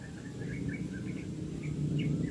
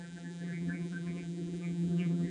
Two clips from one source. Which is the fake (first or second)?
second